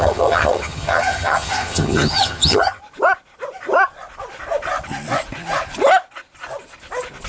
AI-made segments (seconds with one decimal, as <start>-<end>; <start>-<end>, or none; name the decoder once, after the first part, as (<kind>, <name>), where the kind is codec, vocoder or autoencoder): 0.0-2.8 (vocoder, HiFi-GAN)

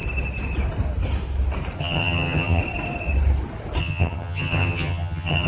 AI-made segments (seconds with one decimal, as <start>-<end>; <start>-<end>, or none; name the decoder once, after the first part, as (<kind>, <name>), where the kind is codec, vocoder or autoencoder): 1.8-2.6 (vocoder, HiFi-GAN); 3.8-5.5

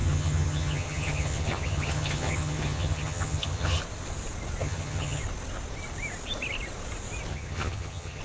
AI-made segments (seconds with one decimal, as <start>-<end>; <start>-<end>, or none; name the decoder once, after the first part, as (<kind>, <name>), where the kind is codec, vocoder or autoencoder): 0.0-3.8 (vocoder, HiFi-GAN); 4.6-5.2; 7.3-8.2

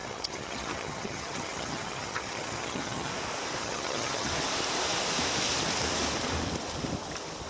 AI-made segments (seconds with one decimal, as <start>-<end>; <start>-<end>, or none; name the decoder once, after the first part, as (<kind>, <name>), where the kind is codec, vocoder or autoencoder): 0.0-3.1 (vocoder, HiFi-GAN); 3.6-4.3

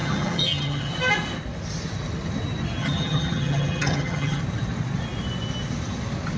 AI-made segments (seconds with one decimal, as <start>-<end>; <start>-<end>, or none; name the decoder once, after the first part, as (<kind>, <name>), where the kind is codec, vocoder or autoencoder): 0.0-0.9 (vocoder, HiFi-GAN); 2.8-4.4

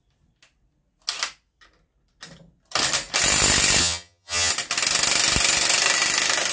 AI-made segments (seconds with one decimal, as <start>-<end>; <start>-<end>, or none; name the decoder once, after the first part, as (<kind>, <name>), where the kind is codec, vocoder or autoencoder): 3.8-4.5 (vocoder, HiFi-GAN)